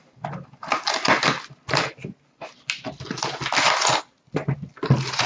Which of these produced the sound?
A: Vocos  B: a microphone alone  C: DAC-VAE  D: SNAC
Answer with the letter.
B